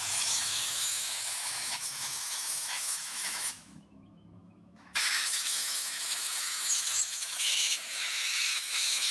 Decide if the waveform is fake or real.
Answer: fake